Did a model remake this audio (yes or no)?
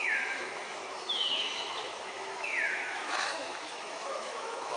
yes